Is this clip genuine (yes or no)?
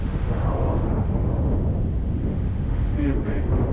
no